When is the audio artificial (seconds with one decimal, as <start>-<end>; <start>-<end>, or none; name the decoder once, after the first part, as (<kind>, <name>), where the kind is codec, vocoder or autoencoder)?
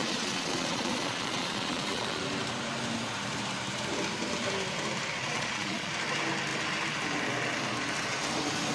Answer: 0.0-2.2 (vocoder, Vocos); 5.2-5.9